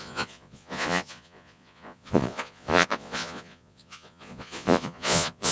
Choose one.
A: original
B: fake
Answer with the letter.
B